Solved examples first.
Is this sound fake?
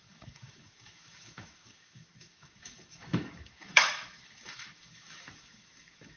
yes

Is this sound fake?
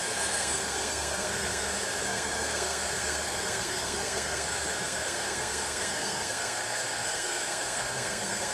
yes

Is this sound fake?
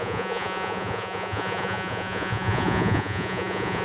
yes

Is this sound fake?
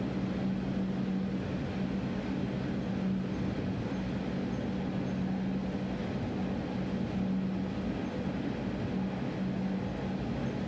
no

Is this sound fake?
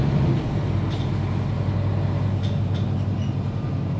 no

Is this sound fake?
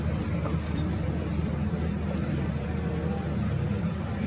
yes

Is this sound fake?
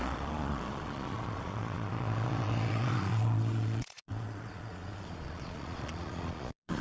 yes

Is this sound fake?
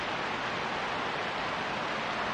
no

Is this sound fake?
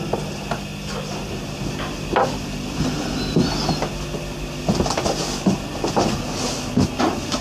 no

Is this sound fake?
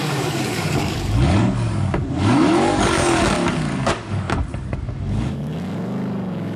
yes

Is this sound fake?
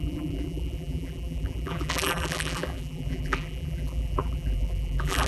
yes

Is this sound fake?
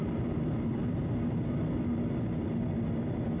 no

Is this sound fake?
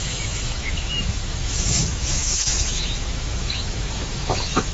yes